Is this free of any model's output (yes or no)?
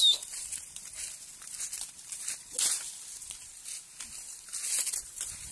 yes